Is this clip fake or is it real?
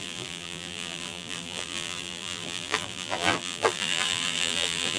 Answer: fake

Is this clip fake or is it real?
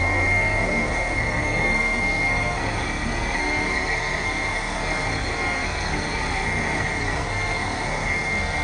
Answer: fake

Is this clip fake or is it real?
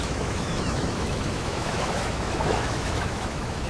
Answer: fake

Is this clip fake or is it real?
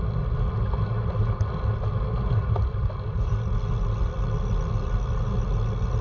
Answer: real